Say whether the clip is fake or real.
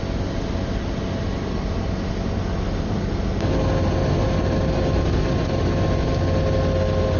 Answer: real